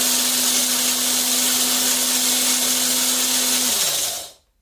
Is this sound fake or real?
real